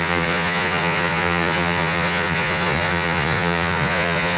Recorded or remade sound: remade